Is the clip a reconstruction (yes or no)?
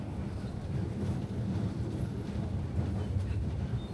no